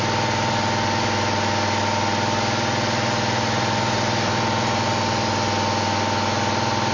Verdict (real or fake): real